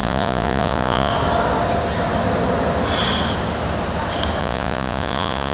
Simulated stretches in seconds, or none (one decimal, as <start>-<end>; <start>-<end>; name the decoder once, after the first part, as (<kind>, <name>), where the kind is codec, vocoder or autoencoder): 0.0-1.1 (vocoder, Vocos); 4.4-5.5